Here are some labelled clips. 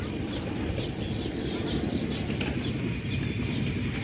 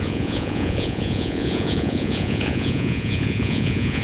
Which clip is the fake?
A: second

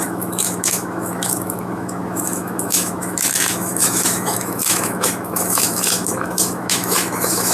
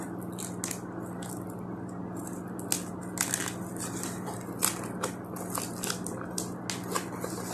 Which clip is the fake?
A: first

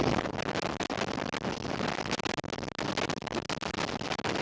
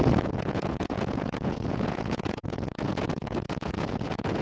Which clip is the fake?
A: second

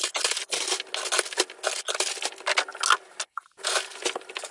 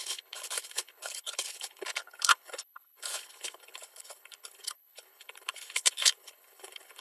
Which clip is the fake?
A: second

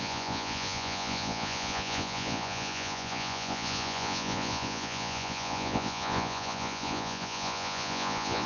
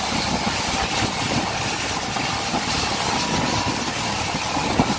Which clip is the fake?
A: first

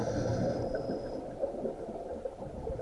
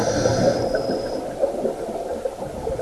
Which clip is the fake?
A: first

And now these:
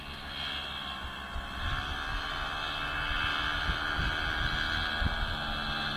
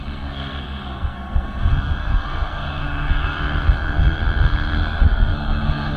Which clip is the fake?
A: second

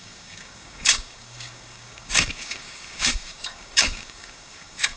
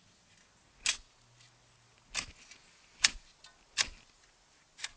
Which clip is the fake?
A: first